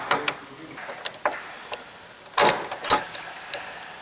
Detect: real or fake real